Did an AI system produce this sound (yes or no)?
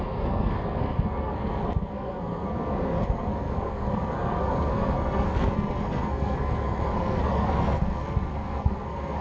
yes